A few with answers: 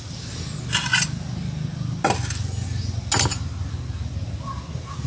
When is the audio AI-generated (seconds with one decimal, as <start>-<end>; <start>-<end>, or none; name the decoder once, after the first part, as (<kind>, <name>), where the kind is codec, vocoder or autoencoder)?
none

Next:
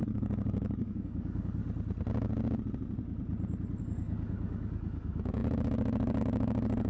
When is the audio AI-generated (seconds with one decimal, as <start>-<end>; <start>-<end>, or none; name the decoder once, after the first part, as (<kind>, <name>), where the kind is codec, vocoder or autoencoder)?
0.0-1.6 (codec, DAC); 3.8-6.9

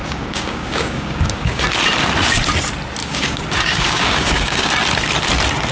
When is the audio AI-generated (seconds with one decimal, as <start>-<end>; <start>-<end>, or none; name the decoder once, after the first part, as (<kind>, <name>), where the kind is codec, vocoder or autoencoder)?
0.0-1.6 (codec, DAC); 3.0-4.7